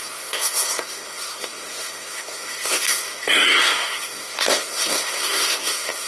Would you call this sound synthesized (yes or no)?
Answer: yes